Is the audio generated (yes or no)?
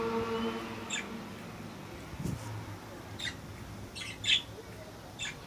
no